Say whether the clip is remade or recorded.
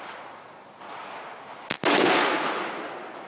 recorded